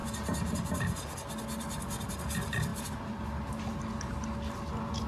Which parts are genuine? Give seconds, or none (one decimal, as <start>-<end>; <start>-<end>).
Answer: 0.0-5.1